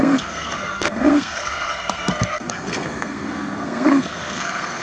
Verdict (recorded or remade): remade